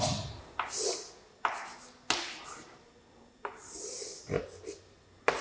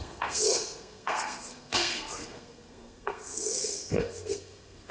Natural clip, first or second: first